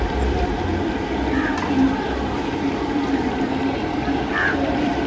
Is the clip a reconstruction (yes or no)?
yes